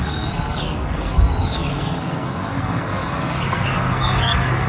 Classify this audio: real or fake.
fake